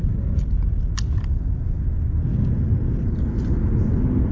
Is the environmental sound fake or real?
real